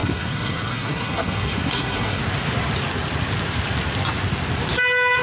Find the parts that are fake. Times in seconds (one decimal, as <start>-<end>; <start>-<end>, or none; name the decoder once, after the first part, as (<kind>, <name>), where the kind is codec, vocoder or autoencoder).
0.0-2.2 (codec, SNAC)